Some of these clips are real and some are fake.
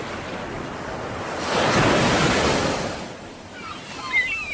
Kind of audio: real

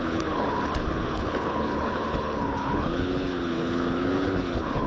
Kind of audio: fake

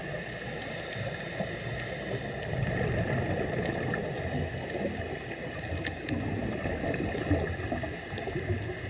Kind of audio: real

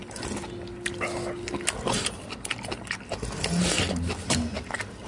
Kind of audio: real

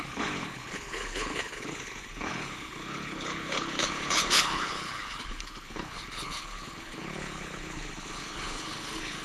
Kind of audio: fake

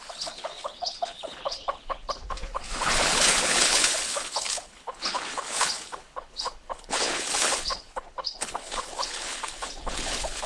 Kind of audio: fake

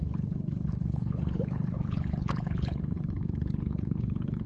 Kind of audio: fake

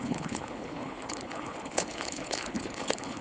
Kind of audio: fake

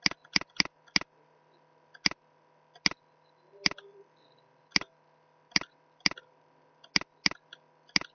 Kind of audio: real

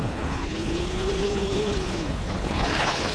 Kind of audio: fake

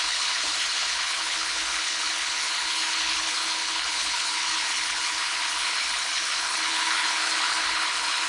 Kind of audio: fake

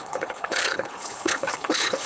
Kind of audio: fake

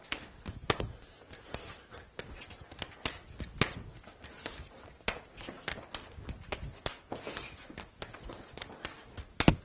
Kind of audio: real